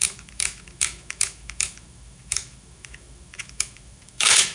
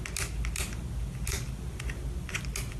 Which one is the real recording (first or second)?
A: second